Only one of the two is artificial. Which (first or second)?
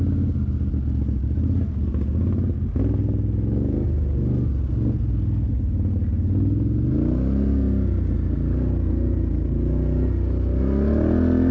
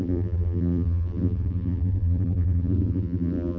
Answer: second